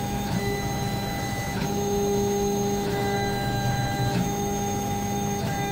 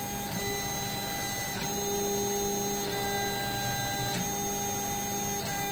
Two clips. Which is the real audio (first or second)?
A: second